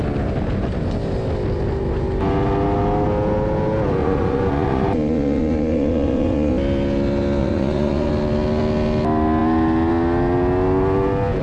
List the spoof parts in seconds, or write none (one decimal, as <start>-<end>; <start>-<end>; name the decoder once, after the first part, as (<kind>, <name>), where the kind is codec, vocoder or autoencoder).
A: 4.0-6.5 (vocoder, Vocos); 7.4-8.1